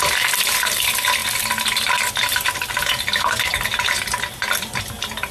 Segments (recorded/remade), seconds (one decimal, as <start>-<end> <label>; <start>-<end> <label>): 0.0-5.3 recorded